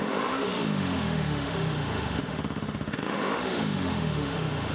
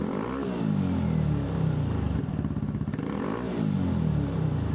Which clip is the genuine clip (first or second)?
second